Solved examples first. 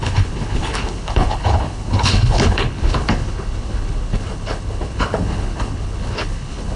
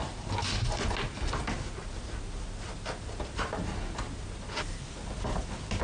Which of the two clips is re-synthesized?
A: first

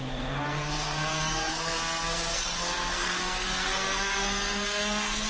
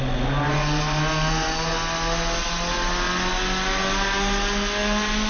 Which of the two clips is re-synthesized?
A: first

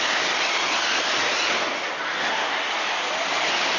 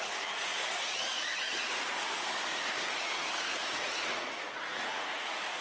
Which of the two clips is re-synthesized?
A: second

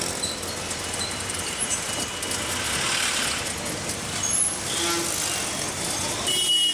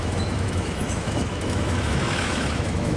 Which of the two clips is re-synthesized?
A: second